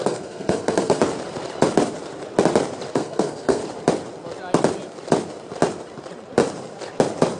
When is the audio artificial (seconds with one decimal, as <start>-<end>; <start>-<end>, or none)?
0.0-1.0; 2.9-3.6